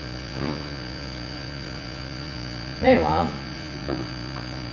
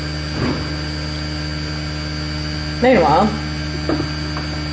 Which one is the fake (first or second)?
first